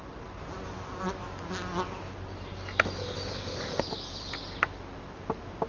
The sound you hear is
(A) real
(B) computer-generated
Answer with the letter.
A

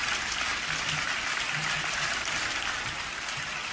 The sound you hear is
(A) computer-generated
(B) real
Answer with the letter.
B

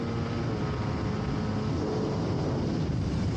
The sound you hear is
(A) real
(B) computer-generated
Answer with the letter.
A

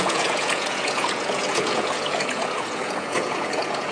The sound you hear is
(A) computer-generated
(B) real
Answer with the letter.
A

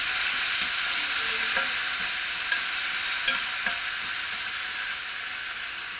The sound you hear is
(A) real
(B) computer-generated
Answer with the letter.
A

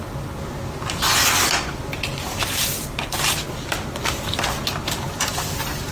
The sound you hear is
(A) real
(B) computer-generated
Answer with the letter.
A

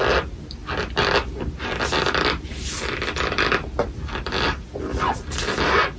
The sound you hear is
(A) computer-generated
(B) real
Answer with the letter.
B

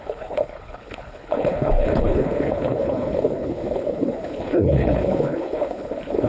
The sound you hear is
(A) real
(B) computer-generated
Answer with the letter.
B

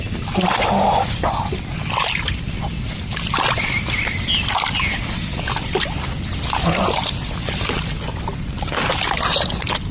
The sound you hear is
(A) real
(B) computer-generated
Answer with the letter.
A